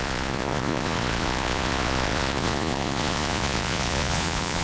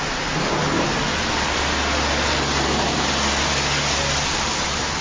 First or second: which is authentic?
second